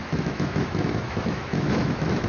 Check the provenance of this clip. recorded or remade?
remade